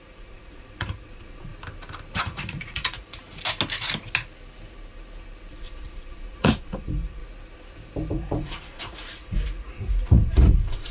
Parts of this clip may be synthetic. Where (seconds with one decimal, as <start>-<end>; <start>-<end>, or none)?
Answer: 0.0-1.5; 2.2-3.2; 5.5-7.2; 8.1-10.9